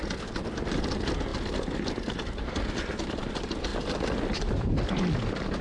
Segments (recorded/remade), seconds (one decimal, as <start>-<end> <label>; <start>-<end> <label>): 0.0-5.6 recorded